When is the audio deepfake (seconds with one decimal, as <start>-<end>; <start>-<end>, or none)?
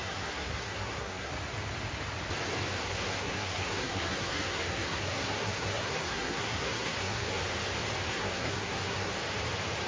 0.0-1.3; 2.8-7.4; 8.1-9.1